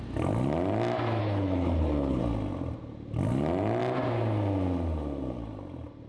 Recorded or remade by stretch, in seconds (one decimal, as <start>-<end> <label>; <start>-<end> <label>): 0.0-1.2 recorded; 1.2-2.2 remade; 2.2-6.1 recorded